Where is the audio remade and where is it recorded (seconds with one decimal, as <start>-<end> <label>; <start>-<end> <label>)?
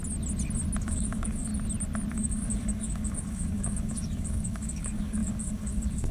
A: 0.0-0.8 recorded; 0.8-1.5 remade; 1.5-2.1 recorded; 2.1-6.1 remade